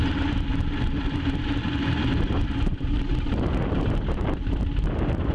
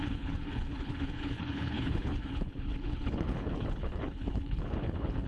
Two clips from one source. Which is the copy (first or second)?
second